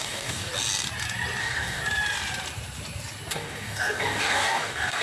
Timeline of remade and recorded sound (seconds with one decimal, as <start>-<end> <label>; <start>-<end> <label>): 0.0-0.5 remade; 0.5-1.4 recorded; 1.4-1.8 remade; 1.8-3.3 recorded; 3.3-5.0 remade